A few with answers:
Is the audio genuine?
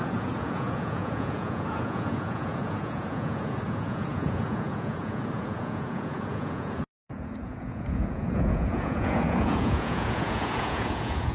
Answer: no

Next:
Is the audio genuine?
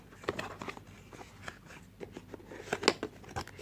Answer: yes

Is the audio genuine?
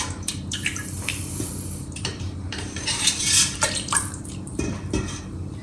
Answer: no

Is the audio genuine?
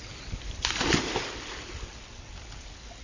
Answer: yes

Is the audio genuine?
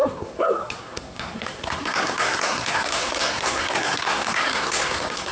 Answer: no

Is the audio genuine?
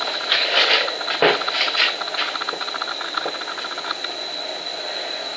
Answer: yes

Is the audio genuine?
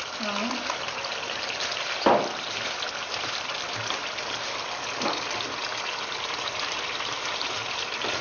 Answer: yes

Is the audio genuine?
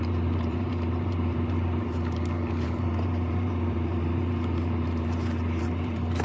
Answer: no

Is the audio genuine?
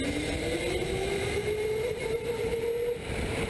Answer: yes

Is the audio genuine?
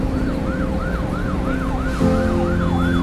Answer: yes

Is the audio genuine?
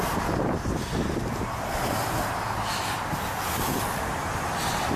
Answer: yes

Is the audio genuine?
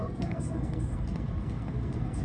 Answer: no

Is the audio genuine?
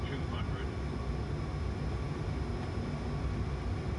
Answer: yes